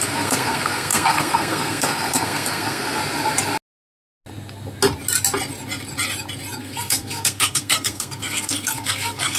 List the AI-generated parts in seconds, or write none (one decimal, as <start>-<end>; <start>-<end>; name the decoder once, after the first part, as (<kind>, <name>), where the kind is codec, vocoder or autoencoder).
0.0-3.0 (codec, SNAC); 6.6-9.4